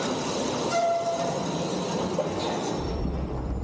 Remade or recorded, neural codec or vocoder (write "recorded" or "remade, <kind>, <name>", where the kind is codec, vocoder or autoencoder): recorded